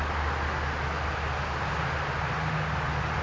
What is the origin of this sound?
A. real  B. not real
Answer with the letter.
A